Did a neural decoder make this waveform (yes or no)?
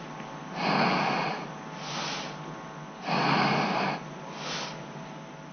no